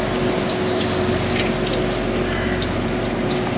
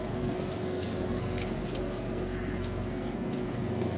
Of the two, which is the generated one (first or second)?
second